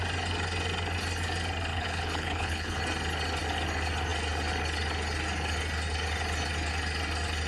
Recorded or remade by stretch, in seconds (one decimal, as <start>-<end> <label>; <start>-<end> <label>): 0.0-1.7 recorded; 1.7-2.8 remade; 2.8-7.5 recorded